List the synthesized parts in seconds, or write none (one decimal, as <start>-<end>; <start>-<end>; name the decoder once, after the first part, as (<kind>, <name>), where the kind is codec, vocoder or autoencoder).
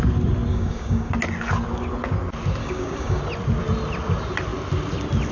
0.5-1.1 (codec, DAC); 2.6-3.2